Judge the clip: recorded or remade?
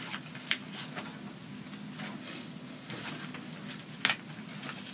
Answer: recorded